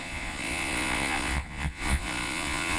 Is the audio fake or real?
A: fake